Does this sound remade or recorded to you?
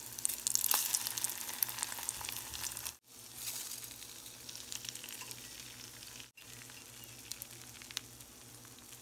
recorded